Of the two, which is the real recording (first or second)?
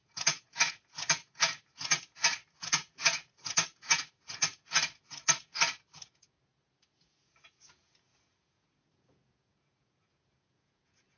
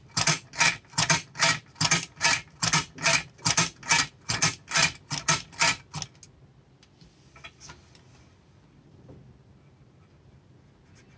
second